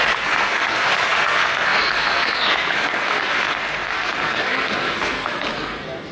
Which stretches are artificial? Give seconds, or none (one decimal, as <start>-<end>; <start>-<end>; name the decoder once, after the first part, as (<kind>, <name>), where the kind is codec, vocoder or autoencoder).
0.0-6.1 (codec, SNAC)